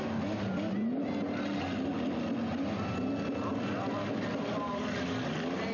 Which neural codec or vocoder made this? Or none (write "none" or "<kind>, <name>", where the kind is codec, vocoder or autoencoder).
none